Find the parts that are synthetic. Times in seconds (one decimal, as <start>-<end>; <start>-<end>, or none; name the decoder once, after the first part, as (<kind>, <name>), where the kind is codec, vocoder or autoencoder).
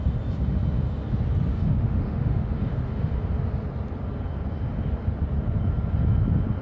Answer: 1.5-3.1 (autoencoder, DAC-VAE)